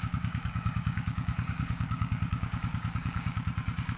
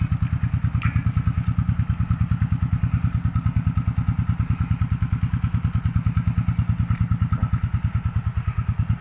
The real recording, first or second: second